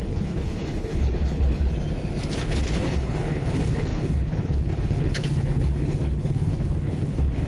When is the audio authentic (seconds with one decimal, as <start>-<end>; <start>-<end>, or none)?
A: 1.7-2.4

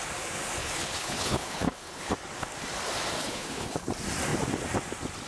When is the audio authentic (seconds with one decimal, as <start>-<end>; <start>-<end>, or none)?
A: 0.0-0.6; 2.1-3.2; 3.9-5.3

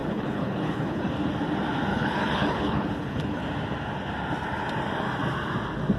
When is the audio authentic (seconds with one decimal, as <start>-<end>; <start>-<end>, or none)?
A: 1.1-1.9; 3.4-6.0

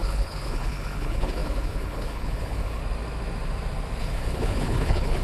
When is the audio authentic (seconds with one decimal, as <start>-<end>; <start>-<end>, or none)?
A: 2.8-4.0

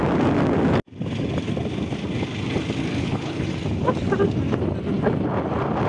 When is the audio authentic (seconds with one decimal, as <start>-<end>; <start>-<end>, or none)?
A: 0.0-3.0; 3.5-5.9

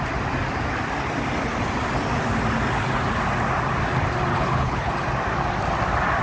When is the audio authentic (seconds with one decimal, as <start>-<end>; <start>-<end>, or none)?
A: 0.0-4.3; 4.9-6.2

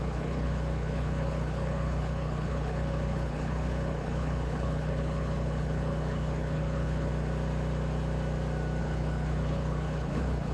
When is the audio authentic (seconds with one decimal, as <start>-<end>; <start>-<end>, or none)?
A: 7.1-8.8

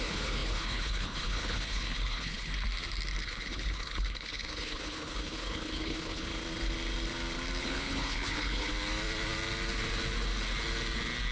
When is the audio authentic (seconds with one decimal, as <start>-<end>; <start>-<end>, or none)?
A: 2.5-3.2; 6.3-7.6; 8.7-11.3